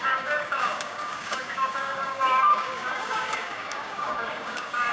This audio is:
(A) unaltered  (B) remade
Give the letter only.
B